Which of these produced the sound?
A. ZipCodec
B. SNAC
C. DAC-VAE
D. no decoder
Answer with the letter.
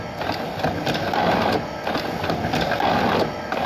D